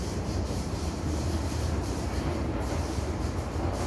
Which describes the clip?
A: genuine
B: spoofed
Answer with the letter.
B